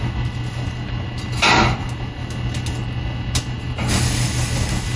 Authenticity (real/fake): real